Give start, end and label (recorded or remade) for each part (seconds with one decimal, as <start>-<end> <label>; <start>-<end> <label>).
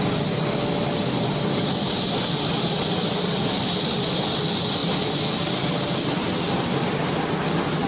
0.0-7.9 recorded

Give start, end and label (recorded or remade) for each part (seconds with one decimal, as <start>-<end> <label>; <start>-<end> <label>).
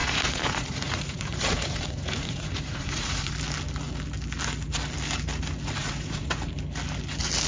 0.0-3.3 remade; 3.3-5.8 recorded; 5.8-6.5 remade; 6.5-7.5 recorded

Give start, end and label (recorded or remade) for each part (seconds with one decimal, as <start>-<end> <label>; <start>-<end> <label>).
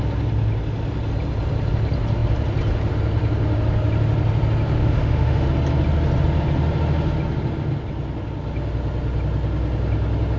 0.0-4.8 recorded; 4.8-5.5 remade; 5.5-10.4 recorded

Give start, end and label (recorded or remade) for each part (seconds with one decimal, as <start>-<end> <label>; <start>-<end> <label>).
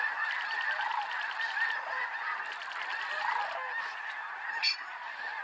0.0-2.1 remade; 2.1-4.6 recorded; 4.6-5.4 remade